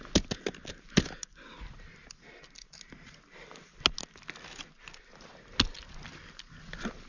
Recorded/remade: recorded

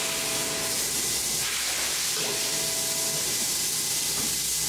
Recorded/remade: recorded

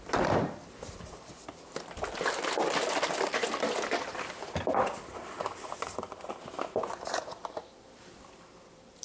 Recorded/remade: remade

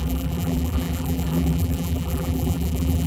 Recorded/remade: remade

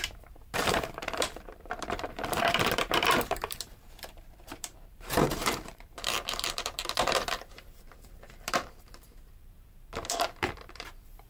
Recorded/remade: remade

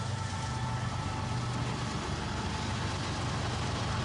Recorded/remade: recorded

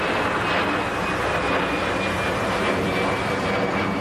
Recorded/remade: recorded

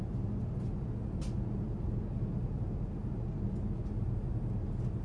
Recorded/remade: recorded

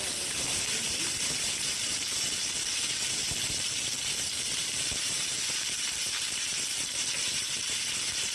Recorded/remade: remade